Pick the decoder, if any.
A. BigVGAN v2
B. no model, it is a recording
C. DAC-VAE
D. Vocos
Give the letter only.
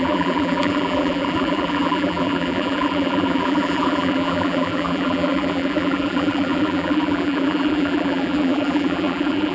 A